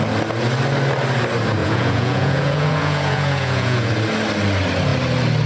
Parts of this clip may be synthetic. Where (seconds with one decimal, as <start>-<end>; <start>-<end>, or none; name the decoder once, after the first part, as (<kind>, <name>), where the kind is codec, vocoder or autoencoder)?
1.6-3.9 (vocoder, Vocos)